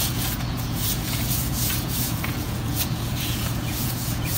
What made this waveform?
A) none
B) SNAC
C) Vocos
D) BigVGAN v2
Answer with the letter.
C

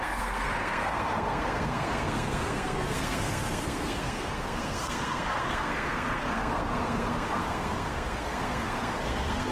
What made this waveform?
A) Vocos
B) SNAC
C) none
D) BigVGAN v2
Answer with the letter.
B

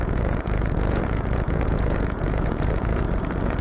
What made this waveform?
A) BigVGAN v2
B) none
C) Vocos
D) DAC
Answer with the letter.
C